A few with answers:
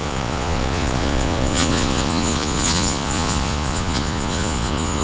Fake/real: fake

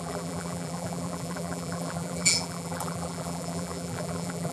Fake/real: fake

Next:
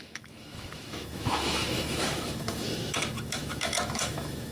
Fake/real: fake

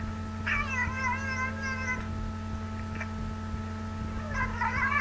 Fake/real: real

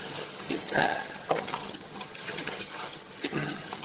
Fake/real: fake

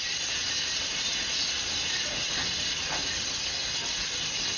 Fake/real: real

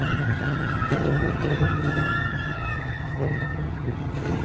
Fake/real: fake